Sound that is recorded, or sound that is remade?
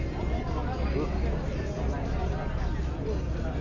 recorded